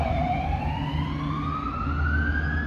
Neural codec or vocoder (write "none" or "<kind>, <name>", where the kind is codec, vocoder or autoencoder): none